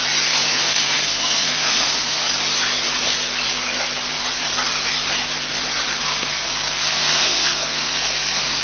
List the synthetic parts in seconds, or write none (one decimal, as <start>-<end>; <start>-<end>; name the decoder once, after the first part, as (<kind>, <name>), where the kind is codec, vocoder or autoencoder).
0.6-2.2 (codec, SNAC); 6.0-8.6